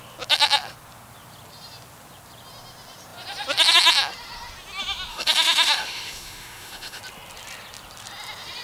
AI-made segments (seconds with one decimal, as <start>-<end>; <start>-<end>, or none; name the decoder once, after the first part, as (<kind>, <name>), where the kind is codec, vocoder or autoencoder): 5.1-7.0 (autoencoder, DAC-VAE)